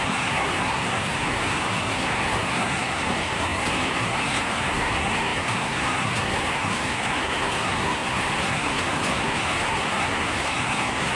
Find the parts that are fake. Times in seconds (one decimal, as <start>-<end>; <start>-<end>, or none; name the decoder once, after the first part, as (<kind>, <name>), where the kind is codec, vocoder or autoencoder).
0.0-11.2 (codec, SNAC)